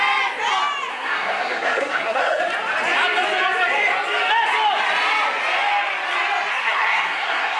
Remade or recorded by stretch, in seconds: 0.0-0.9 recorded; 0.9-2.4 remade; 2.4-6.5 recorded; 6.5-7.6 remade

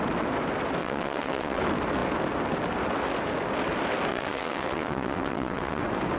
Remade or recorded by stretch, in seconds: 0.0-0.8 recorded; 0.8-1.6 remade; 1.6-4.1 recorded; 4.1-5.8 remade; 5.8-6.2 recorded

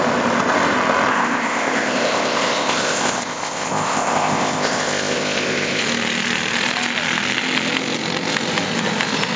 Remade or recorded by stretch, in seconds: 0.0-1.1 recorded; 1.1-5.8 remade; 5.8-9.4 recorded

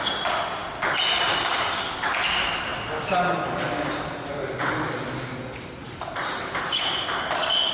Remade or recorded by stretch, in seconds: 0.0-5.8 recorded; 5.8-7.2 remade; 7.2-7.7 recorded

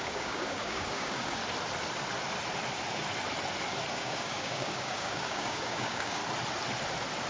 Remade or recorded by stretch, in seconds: 0.0-1.4 remade; 1.4-3.9 recorded; 3.9-6.2 remade; 6.2-7.3 recorded

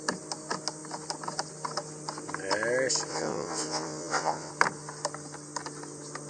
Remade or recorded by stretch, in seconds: 0.0-3.1 recorded; 3.1-4.5 remade; 4.5-6.3 recorded

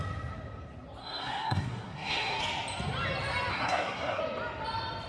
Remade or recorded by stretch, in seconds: 0.0-1.0 recorded; 1.0-2.4 remade; 2.4-3.5 recorded; 3.5-4.2 remade; 4.2-5.1 recorded